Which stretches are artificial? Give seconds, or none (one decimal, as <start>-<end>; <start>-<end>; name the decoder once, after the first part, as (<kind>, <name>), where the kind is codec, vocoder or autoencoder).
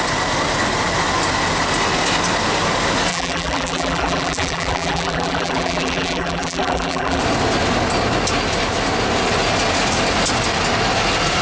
3.1-7.2 (vocoder, BigVGAN v2)